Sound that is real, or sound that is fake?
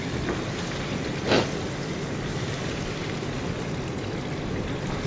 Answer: real